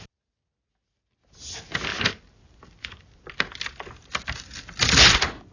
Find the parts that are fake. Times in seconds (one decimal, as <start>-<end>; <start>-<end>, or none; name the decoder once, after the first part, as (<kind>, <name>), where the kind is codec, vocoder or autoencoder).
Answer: 1.9-3.3 (vocoder, BigVGAN v2)